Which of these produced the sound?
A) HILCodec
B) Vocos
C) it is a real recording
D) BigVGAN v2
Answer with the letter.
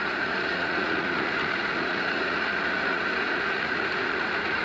B